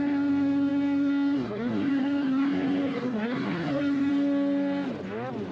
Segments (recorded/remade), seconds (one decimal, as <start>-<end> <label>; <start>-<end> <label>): 0.0-4.1 remade; 4.1-5.5 recorded